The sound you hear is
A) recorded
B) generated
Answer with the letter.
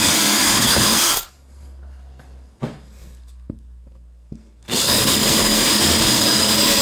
B